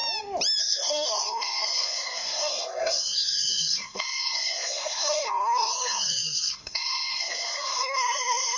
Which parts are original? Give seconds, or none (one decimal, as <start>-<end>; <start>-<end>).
0.0-0.6